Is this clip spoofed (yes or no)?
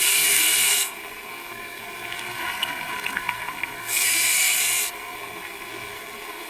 yes